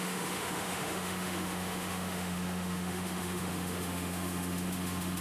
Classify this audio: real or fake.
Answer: fake